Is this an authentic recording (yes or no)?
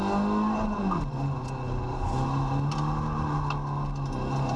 yes